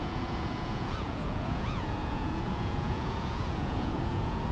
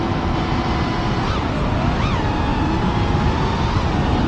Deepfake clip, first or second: first